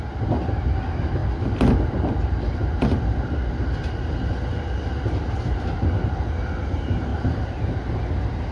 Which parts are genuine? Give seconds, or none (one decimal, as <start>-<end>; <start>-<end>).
0.0-8.5